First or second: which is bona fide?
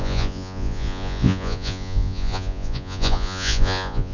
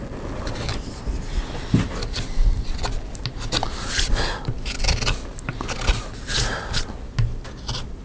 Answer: second